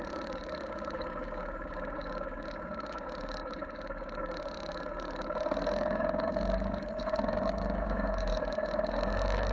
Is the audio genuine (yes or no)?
no